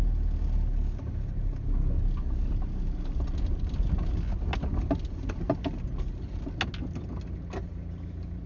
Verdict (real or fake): real